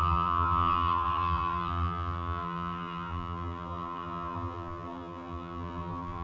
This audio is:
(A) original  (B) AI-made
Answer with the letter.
B